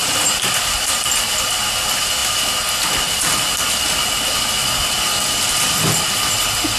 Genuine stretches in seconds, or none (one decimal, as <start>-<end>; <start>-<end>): 0.0-6.8